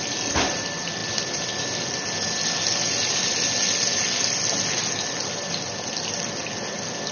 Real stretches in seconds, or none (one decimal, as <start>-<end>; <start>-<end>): 0.0-7.1